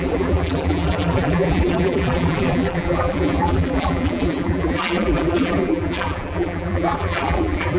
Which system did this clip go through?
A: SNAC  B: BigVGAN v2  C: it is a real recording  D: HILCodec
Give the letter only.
B